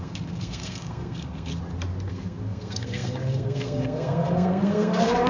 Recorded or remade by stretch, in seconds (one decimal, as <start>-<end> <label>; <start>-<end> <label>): 0.0-1.5 remade; 1.5-2.1 recorded; 2.1-5.3 remade